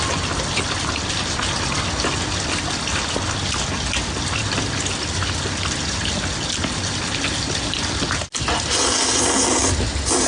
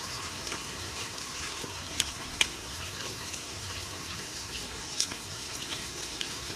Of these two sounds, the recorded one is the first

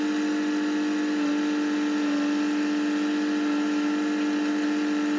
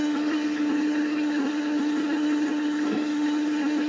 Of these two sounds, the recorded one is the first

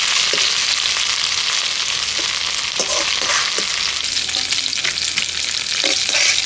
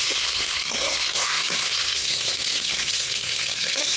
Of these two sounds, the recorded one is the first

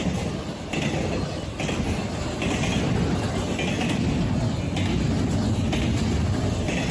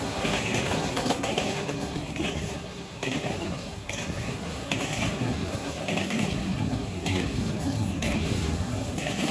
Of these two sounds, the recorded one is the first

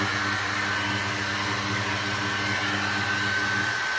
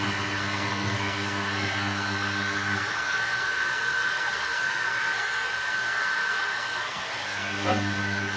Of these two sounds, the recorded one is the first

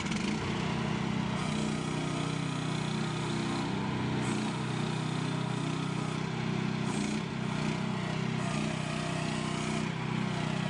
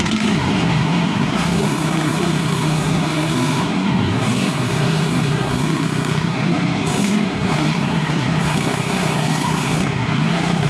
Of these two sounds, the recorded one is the first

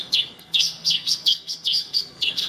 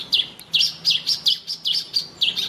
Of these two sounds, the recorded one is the second